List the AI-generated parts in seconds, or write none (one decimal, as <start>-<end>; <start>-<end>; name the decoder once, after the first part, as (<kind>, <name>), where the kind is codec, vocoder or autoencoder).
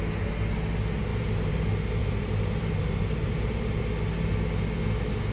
1.1-1.6 (vocoder, BigVGAN v2); 2.0-3.8